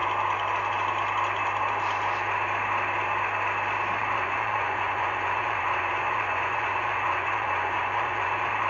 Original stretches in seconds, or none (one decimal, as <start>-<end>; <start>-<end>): 0.0-4.0